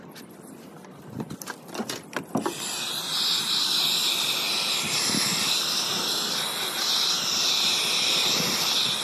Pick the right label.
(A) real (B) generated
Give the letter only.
A